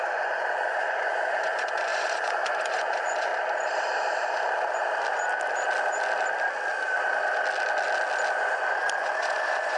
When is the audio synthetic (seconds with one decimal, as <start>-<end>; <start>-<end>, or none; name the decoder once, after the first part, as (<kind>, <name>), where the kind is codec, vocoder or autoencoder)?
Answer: 0.0-3.3 (vocoder, Vocos); 8.3-9.8